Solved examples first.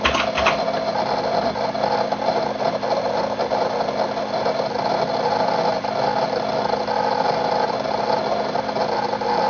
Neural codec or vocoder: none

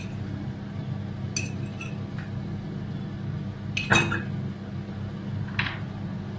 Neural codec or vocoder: none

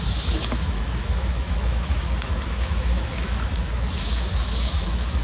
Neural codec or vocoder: autoencoder, DAC-VAE